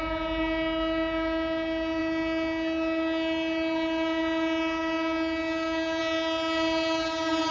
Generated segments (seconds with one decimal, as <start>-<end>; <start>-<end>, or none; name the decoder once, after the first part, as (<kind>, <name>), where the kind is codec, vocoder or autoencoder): none